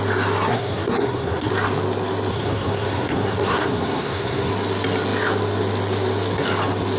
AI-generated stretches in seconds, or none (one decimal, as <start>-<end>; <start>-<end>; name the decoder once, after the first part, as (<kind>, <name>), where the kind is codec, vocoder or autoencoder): 0.5-1.5 (codec, SNAC); 2.3-4.5